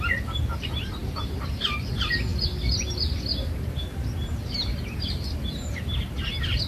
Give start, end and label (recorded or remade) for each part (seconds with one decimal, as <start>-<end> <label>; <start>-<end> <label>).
0.0-2.3 remade; 2.3-3.8 recorded; 3.8-6.7 remade